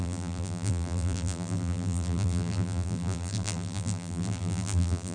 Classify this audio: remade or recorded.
remade